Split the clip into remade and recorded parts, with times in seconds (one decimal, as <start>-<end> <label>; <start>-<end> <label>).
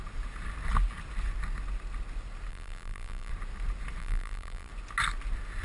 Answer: 0.0-2.5 recorded; 2.5-3.3 remade; 3.3-4.0 recorded; 4.0-4.7 remade; 4.7-5.6 recorded